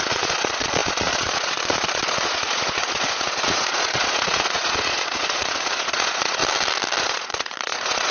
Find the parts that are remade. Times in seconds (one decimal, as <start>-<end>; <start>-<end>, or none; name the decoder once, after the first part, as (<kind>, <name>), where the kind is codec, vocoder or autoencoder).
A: 0.0-6.4 (vocoder, Vocos); 7.0-8.1